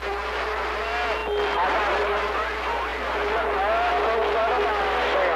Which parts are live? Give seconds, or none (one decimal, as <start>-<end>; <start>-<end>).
0.0-5.4